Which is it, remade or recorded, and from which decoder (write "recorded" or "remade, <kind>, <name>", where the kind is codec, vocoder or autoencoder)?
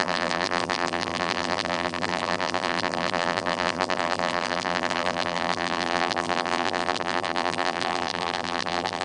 remade, vocoder, BigVGAN v2